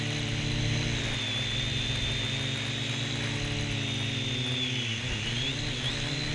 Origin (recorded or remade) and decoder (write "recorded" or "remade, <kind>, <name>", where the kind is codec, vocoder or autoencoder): recorded